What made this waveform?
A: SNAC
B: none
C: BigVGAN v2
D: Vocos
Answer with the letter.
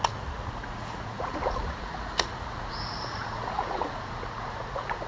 D